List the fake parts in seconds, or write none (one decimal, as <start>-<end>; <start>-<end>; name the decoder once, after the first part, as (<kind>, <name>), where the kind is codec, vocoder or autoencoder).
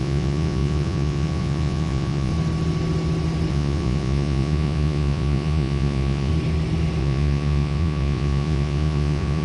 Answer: 0.0-2.3 (vocoder, Vocos); 3.5-6.3; 7.0-9.4